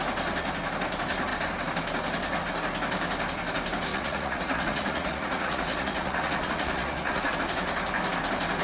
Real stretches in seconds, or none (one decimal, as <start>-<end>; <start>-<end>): 0.0-3.9; 7.3-8.6